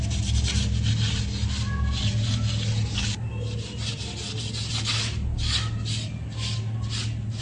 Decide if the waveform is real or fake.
real